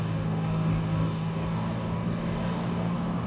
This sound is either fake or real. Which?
fake